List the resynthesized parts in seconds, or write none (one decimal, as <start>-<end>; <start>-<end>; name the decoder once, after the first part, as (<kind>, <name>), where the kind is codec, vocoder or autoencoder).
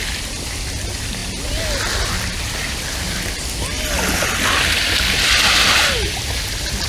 none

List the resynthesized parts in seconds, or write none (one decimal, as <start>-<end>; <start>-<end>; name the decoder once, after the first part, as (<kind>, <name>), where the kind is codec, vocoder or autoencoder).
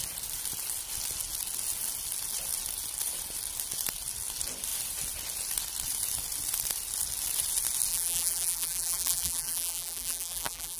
7.9-10.8 (vocoder, BigVGAN v2)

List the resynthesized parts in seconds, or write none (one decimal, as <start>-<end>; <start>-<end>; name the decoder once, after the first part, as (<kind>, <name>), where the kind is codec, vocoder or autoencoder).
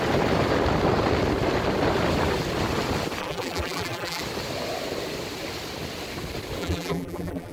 3.2-4.2 (vocoder, BigVGAN v2); 6.6-7.5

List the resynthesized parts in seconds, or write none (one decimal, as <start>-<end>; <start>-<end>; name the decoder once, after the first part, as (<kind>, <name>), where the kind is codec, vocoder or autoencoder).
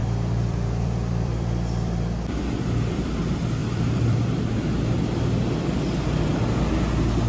0.0-3.2 (vocoder, BigVGAN v2); 3.6-4.4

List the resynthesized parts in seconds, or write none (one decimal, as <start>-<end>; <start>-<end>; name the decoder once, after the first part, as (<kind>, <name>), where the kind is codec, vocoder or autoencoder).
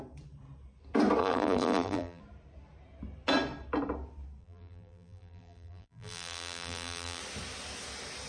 1.2-2.2 (vocoder, BigVGAN v2); 4.4-7.2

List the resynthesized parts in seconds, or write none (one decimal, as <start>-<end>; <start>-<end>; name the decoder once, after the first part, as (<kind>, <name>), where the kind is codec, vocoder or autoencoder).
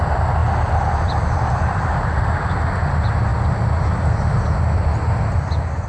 0.4-1.9 (vocoder, BigVGAN v2)